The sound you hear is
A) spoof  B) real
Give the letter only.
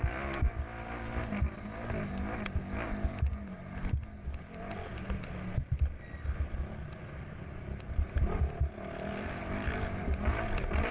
B